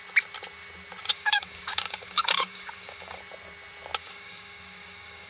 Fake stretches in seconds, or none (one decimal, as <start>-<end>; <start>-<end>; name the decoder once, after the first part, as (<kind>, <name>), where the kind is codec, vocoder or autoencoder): 1.1-3.2 (codec, DAC); 4.0-5.3